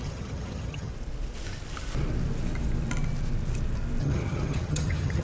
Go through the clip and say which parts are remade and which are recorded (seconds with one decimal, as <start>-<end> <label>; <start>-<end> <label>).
0.0-0.9 remade; 0.9-4.0 recorded; 4.0-5.2 remade